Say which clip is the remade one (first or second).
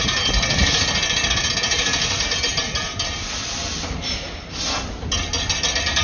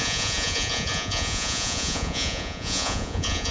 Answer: second